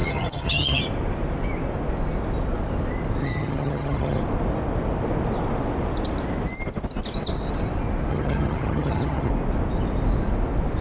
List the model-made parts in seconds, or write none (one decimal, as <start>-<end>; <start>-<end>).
0.0-0.8; 3.2-4.2; 8.1-9.3